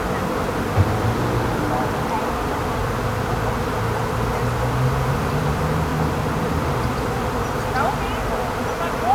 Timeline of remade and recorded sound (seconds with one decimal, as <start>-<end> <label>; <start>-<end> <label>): 0.0-2.8 remade; 2.8-5.1 recorded; 5.1-5.9 remade; 5.9-8.1 recorded; 8.1-9.1 remade